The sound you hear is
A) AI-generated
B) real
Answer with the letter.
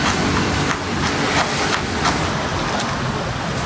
B